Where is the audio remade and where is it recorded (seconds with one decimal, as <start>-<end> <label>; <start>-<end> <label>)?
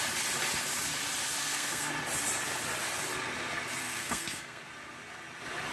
0.0-1.4 recorded; 1.4-1.9 remade; 1.9-3.8 recorded; 3.8-4.6 remade; 4.6-5.7 recorded